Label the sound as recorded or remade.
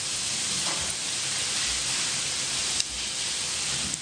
recorded